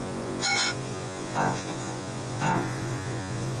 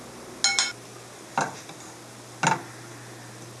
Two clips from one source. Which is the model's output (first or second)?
first